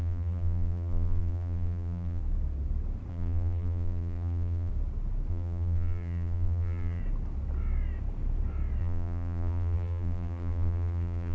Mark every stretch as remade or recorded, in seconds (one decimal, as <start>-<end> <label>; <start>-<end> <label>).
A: 0.0-2.2 remade; 2.2-3.1 recorded; 3.1-4.7 remade; 4.7-5.3 recorded; 5.3-7.0 remade; 7.0-8.8 recorded; 8.8-11.3 remade